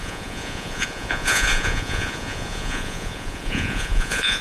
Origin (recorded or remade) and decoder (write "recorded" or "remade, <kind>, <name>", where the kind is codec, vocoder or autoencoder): remade, vocoder, Vocos